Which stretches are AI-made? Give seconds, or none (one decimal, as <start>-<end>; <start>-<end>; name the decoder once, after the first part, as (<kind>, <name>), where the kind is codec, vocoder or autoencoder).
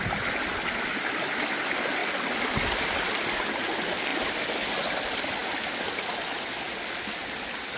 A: none